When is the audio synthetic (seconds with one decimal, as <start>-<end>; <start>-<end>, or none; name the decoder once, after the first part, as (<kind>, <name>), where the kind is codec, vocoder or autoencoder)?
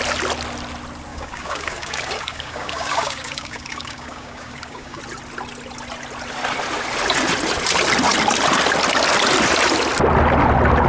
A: 1.1-5.0 (codec, DAC)